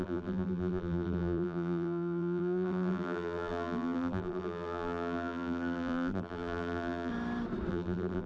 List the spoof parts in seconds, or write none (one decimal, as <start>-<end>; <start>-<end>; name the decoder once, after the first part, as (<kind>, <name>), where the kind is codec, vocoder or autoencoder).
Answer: 0.0-7.1 (vocoder, BigVGAN v2); 7.7-8.3